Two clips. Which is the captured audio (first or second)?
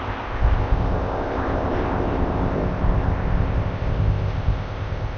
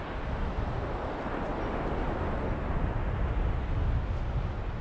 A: second